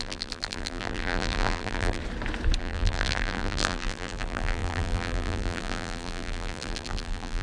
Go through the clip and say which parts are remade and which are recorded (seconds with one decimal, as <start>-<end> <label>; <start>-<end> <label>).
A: 0.0-2.0 remade; 2.0-2.6 recorded; 2.6-7.4 remade

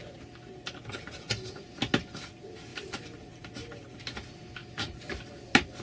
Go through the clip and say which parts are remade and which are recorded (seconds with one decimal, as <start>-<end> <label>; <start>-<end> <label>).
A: 0.0-2.7 recorded; 2.7-3.3 remade; 3.3-4.6 recorded; 4.6-5.1 remade; 5.1-5.8 recorded

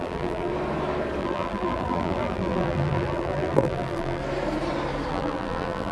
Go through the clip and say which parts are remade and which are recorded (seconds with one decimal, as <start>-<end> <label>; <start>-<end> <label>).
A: 0.0-0.5 remade; 0.5-1.2 recorded; 1.2-4.2 remade; 4.2-5.1 recorded; 5.1-5.9 remade

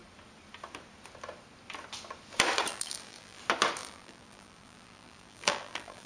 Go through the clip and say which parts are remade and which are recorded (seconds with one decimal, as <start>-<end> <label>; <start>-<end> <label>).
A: 0.0-2.7 recorded; 2.7-3.4 remade; 3.4-3.8 recorded; 3.8-6.1 remade

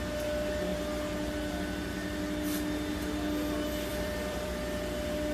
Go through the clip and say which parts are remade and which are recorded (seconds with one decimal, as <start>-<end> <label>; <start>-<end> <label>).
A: 0.0-3.9 recorded; 3.9-4.6 remade; 4.6-5.3 recorded

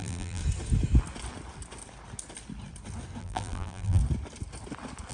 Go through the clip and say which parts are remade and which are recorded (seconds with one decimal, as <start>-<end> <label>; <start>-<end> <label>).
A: 0.0-0.4 remade; 0.4-3.2 recorded; 3.2-4.0 remade; 4.0-5.1 recorded

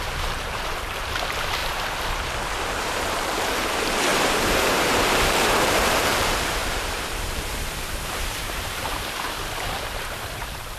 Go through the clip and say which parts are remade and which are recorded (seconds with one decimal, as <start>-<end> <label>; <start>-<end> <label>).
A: 0.0-1.6 remade; 1.6-2.9 recorded; 2.9-4.1 remade; 4.1-5.1 recorded; 5.1-10.8 remade